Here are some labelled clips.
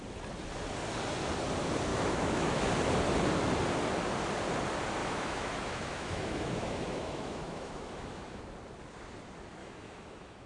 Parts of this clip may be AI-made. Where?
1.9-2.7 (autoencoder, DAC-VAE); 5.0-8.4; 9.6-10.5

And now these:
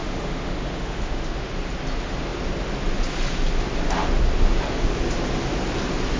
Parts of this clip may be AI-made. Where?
0.0-1.5 (autoencoder, DAC-VAE)

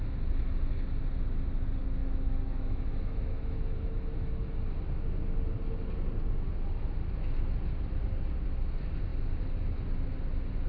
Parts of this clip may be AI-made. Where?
2.0-4.3 (autoencoder, DAC-VAE)

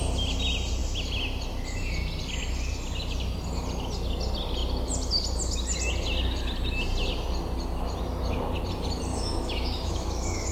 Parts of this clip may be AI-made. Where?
9.1-10.5 (autoencoder, DAC-VAE)

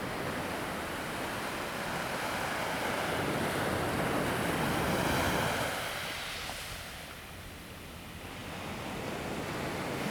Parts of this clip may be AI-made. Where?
none

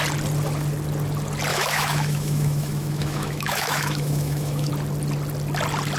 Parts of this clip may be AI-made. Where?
1.5-4.7 (autoencoder, DAC-VAE)